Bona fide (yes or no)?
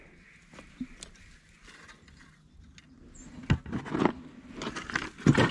yes